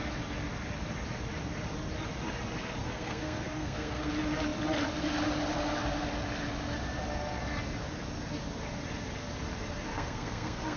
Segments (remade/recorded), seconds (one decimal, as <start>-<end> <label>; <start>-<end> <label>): 0.0-2.8 recorded; 2.8-4.1 remade; 4.1-9.9 recorded; 9.9-10.8 remade